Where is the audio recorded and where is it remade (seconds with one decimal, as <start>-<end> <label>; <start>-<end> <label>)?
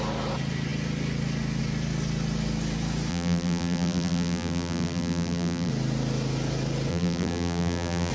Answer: 0.0-3.1 recorded; 3.1-5.7 remade; 5.7-6.9 recorded; 6.9-8.1 remade